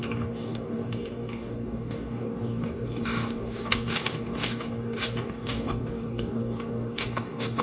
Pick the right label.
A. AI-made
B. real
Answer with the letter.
A